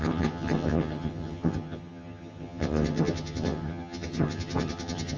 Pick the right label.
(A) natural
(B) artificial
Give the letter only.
B